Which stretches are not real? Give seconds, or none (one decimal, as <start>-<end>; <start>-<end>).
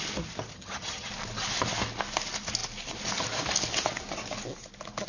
0.5-1.1